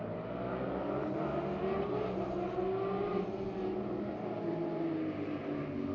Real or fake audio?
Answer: real